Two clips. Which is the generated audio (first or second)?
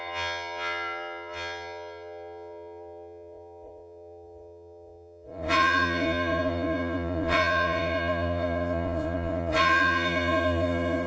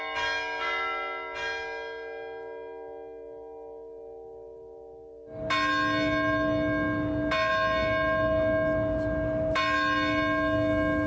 first